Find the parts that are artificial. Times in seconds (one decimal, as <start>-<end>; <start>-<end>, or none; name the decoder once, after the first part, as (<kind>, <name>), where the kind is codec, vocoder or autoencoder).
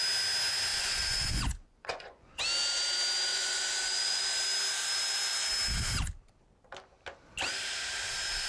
0.7-2.4 (vocoder, Vocos); 3.3-4.2